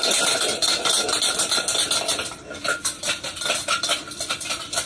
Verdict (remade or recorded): recorded